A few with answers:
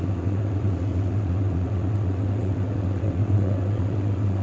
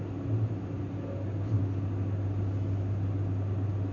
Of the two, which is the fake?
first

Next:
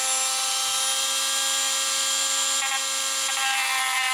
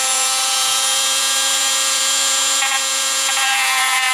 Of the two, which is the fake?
second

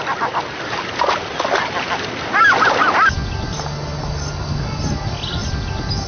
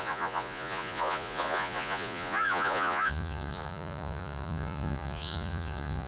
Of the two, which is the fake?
second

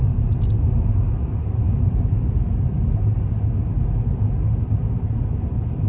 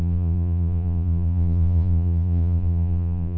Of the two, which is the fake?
second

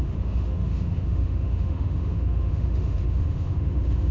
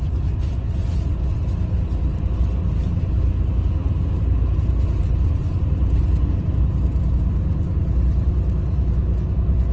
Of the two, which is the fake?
first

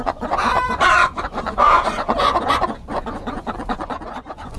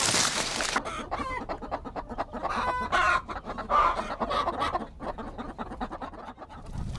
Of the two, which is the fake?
first